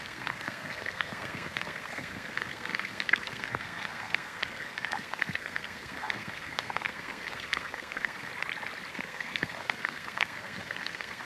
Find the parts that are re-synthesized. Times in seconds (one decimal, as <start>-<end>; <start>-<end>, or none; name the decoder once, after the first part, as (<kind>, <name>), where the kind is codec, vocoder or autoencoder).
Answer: 0.0-8.3 (codec, SNAC); 8.9-11.2